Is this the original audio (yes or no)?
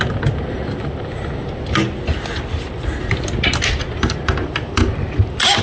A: yes